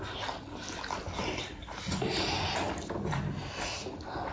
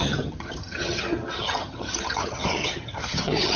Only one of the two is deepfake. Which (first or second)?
second